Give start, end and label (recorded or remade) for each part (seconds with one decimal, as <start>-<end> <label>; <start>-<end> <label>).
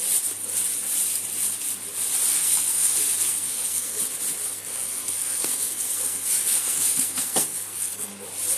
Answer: 0.0-2.3 recorded; 2.3-4.0 remade; 4.0-4.4 recorded; 4.4-8.1 remade; 8.1-8.6 recorded